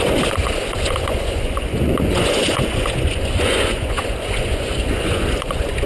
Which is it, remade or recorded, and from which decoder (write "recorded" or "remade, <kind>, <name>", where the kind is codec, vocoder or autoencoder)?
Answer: remade, vocoder, Vocos